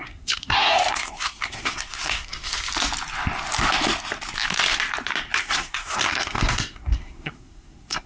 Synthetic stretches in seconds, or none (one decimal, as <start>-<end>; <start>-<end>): 0.0-2.7; 5.4-8.1